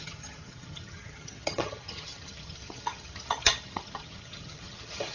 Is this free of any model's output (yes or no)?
no